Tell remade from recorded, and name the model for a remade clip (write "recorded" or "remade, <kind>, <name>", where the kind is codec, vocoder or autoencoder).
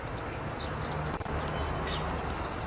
recorded